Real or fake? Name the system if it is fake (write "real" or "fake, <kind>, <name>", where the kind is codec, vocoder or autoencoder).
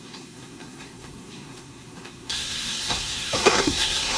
fake, codec, SNAC